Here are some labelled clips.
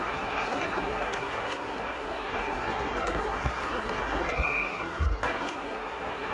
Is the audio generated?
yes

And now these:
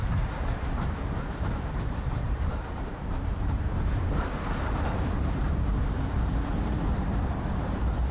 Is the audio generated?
yes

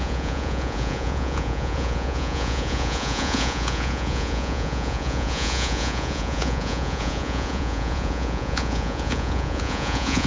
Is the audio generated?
yes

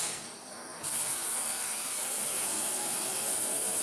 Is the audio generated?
yes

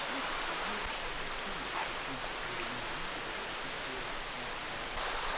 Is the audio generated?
no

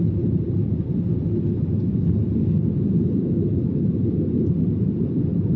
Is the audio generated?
no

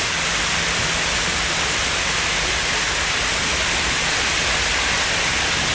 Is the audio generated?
no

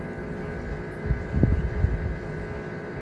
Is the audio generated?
no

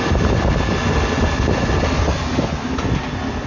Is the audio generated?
no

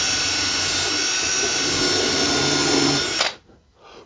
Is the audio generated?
no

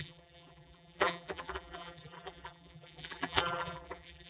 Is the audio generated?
yes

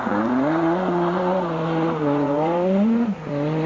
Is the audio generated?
yes